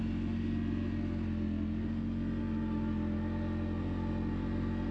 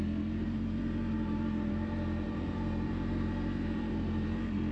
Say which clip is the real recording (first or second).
first